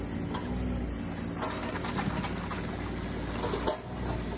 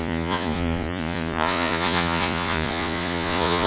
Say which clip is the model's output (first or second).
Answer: second